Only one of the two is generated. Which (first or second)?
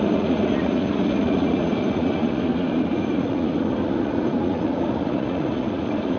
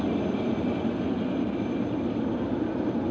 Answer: first